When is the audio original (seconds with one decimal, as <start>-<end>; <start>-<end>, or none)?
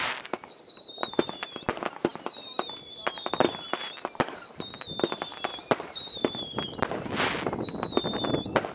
0.0-8.7